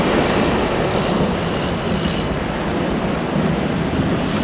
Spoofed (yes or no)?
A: no